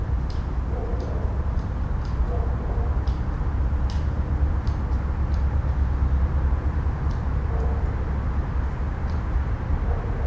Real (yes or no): yes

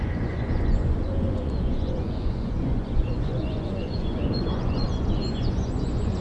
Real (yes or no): no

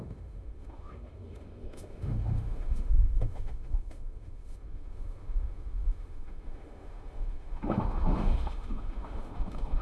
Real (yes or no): no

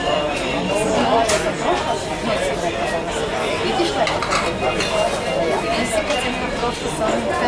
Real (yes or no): yes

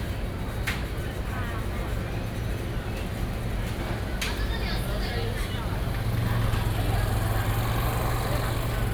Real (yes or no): yes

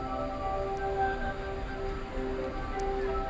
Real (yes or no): yes